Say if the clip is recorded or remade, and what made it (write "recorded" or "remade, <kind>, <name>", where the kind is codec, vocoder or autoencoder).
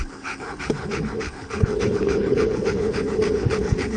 remade, codec, HILCodec